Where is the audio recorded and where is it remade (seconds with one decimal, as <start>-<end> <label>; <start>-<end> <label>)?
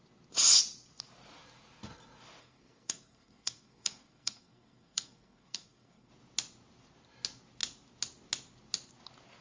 0.0-2.4 recorded; 2.4-6.1 remade; 6.1-9.4 recorded